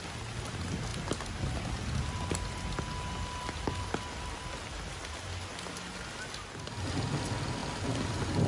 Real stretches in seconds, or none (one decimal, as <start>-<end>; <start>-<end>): 0.0-8.5